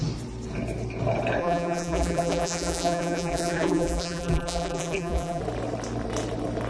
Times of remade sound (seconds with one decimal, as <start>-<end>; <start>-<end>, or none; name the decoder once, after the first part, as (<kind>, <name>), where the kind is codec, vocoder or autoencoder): 1.4-5.4 (vocoder, BigVGAN v2)

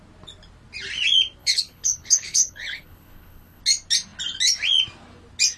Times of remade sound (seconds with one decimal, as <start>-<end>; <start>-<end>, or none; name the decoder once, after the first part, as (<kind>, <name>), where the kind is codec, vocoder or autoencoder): 1.4-3.6 (codec, HILCodec)